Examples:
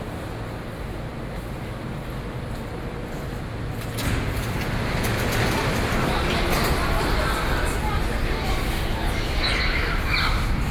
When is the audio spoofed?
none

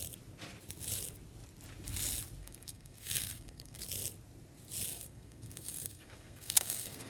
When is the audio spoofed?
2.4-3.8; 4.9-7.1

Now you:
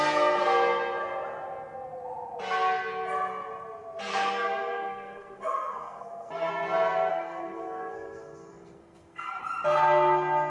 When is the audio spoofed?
4.1-6.5; 7.1-9.4

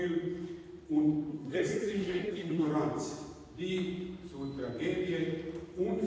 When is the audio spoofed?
1.3-2.7

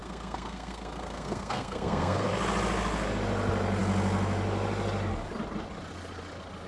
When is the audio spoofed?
0.0-2.3

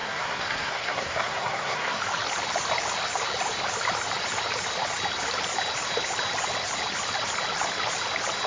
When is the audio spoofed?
0.0-2.0